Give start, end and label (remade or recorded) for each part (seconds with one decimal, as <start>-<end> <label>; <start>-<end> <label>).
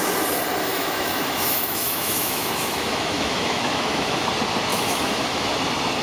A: 0.0-0.7 recorded; 0.7-4.3 remade; 4.3-4.7 recorded; 4.7-5.5 remade; 5.5-6.0 recorded